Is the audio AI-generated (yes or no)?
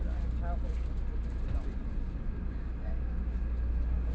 no